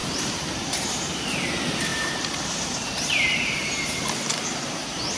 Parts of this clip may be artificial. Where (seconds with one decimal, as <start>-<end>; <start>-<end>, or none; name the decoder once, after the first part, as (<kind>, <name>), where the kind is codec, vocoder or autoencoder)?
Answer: 0.0-1.5 (vocoder, BigVGAN v2); 1.9-5.2

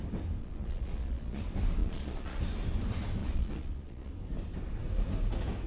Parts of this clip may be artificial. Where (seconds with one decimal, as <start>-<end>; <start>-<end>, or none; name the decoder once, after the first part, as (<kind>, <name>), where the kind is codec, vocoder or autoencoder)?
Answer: 0.4-1.4 (vocoder, Vocos); 1.8-2.4; 3.2-4.1